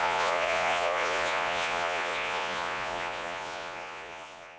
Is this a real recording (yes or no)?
no